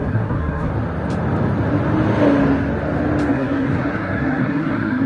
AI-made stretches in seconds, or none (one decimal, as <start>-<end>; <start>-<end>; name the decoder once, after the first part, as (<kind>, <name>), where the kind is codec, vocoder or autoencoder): 0.0-0.7 (codec, SNAC); 3.3-5.1